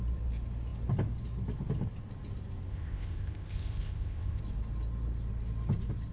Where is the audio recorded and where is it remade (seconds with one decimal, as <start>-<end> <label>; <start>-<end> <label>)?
0.0-2.7 recorded; 2.7-4.4 remade; 4.4-6.1 recorded